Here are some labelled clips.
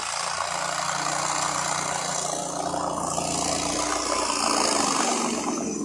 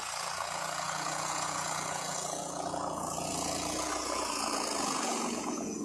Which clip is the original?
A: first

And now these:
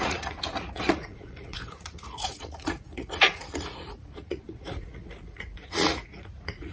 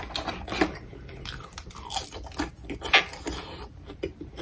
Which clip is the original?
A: second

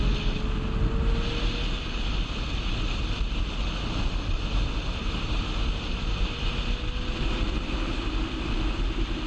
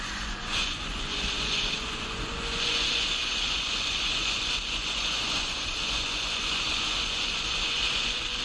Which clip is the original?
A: first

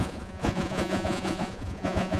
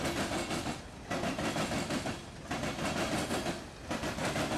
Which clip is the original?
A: second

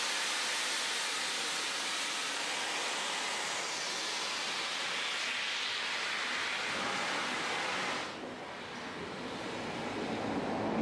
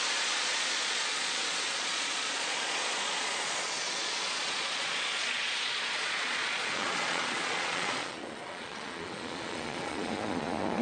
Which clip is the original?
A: first